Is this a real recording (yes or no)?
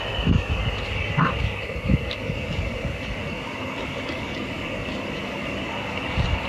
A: no